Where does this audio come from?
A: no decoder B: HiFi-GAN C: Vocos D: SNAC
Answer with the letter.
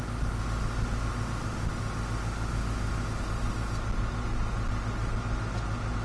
A